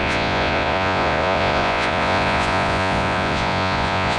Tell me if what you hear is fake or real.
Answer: fake